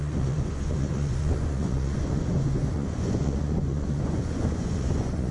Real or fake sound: fake